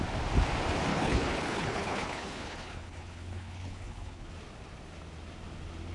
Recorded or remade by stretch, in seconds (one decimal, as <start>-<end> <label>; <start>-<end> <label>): 0.0-0.9 recorded; 0.9-4.3 remade; 4.3-5.9 recorded